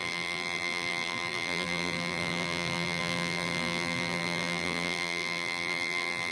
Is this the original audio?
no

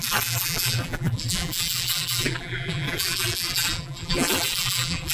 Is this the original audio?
no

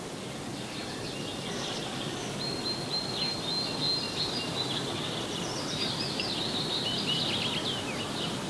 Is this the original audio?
yes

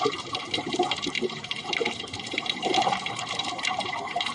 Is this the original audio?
no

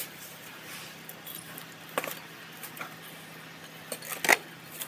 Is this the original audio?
yes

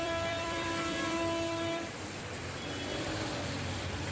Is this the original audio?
no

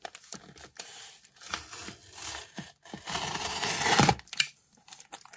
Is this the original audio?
yes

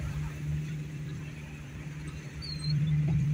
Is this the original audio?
no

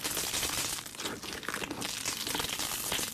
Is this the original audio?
yes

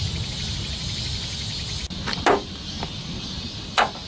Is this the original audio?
no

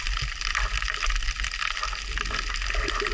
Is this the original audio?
yes